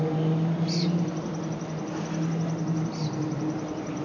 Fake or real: real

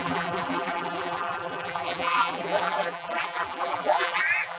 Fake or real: fake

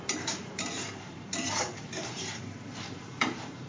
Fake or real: fake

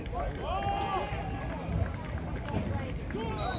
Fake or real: real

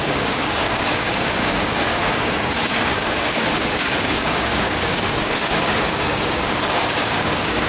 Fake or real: fake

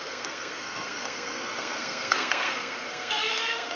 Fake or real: fake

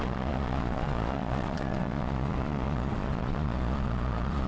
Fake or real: fake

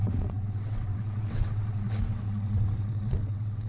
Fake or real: fake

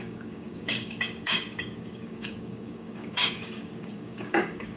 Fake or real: fake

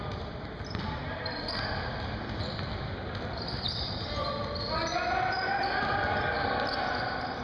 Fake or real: real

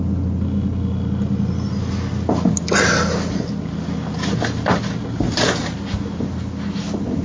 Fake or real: real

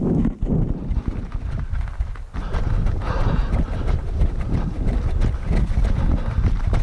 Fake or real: real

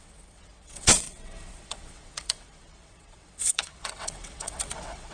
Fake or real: fake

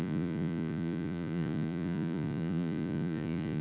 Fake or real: fake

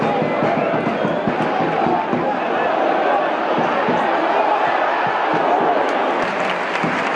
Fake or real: real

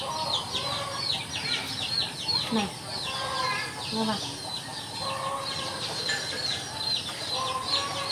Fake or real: real